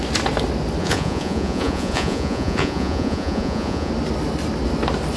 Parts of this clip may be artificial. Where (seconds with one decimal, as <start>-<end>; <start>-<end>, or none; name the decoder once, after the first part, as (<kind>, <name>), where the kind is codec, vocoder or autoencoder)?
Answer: 0.8-3.9 (vocoder, Vocos)